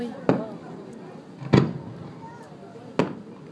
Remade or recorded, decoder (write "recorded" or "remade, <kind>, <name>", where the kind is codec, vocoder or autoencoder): recorded